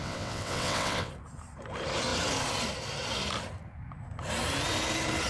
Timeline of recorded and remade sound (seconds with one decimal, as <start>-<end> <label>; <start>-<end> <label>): 0.0-1.1 remade; 1.1-5.3 recorded